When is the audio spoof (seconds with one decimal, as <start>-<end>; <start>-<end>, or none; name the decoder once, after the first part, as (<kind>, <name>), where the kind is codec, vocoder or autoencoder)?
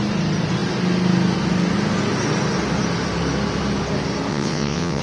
4.3-5.0 (vocoder, WaveNeXt)